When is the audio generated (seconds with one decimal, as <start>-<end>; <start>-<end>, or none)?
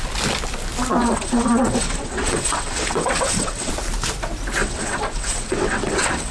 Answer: 1.0-3.7; 4.6-6.3